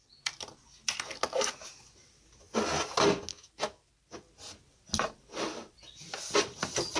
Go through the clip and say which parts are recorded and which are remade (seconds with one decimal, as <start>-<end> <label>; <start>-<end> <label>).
0.0-3.3 recorded; 3.3-3.9 remade; 3.9-7.0 recorded